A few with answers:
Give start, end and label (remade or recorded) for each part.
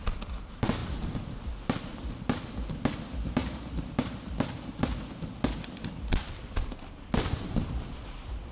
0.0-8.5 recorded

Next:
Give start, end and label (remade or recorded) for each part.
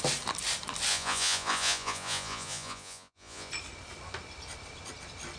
0.0-0.9 recorded; 0.9-3.5 remade; 3.5-5.4 recorded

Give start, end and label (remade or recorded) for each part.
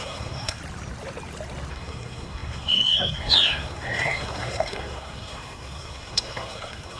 0.0-0.6 remade; 0.6-1.7 recorded; 1.7-7.0 remade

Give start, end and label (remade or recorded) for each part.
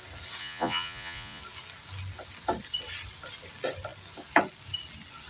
0.0-0.4 recorded; 0.4-1.4 remade; 1.4-5.3 recorded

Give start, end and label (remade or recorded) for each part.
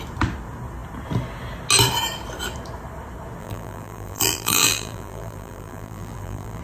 0.0-3.4 recorded; 3.4-6.6 remade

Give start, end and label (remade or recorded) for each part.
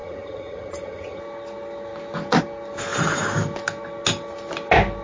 0.0-1.2 remade; 1.2-5.0 recorded